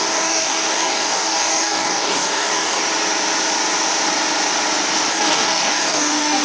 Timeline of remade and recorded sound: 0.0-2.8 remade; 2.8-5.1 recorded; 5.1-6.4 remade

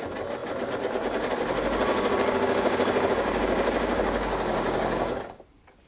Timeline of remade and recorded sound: 0.0-1.9 recorded; 1.9-5.4 remade; 5.4-5.9 recorded